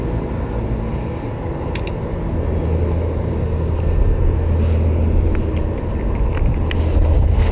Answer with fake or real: real